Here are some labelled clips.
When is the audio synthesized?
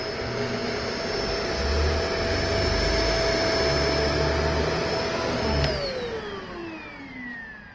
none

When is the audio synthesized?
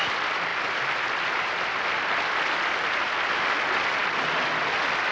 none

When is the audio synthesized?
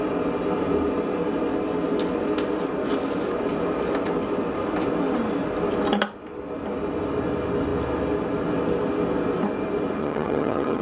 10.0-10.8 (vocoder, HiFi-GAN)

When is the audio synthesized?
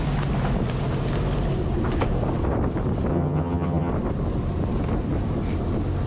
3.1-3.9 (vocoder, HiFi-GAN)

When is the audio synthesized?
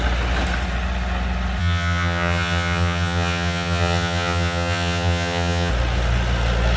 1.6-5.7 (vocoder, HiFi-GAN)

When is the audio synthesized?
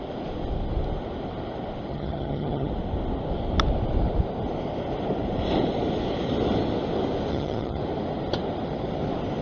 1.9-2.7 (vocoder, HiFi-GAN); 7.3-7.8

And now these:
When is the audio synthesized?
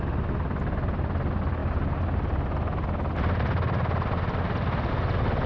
none